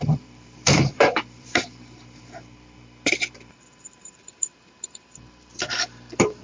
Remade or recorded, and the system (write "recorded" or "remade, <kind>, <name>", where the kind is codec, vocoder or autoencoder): remade, vocoder, BigVGAN v2